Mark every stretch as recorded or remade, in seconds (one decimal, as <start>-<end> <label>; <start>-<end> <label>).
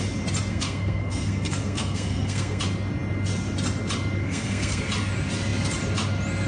0.0-0.5 recorded; 0.5-2.6 remade; 2.6-4.2 recorded; 4.2-4.8 remade; 4.8-6.5 recorded